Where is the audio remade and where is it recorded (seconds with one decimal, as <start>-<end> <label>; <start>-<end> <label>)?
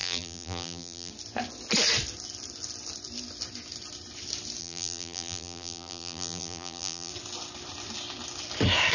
0.0-1.1 remade; 1.1-4.6 recorded; 4.6-7.1 remade; 7.1-8.9 recorded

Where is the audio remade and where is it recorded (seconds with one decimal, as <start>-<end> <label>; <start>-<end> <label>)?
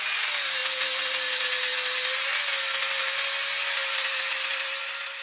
0.0-3.8 recorded; 3.8-4.8 remade; 4.8-5.2 recorded